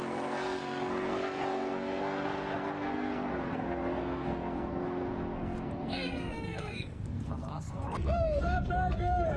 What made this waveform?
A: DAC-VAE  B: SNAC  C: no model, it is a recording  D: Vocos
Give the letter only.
B